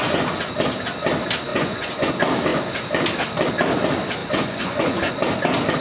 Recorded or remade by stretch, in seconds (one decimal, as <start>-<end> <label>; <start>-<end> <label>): 0.0-1.5 recorded; 1.5-2.1 remade; 2.1-4.2 recorded; 4.2-5.1 remade; 5.1-5.8 recorded